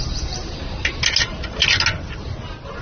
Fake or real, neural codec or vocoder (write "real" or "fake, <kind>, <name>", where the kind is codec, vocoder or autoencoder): real